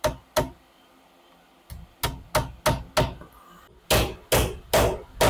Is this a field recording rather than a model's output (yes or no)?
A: yes